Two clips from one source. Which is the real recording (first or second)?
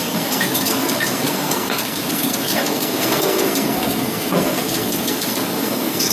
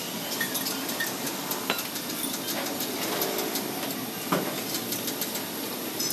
second